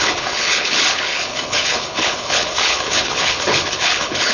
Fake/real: fake